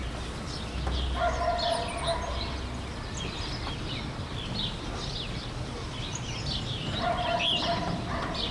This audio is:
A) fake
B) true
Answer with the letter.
B